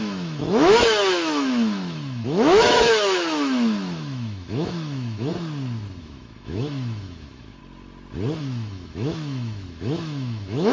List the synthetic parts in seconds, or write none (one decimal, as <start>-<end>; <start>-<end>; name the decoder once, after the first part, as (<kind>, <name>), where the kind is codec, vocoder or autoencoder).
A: 0.0-5.3 (autoencoder, DAC-VAE); 6.0-7.6; 8.4-10.7